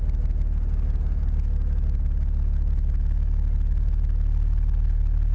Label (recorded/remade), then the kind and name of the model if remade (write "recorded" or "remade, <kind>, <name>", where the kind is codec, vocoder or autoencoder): recorded